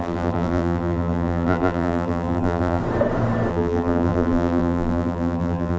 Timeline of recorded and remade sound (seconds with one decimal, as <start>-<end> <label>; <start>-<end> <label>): 0.0-2.8 remade; 2.8-3.5 recorded; 3.5-5.8 remade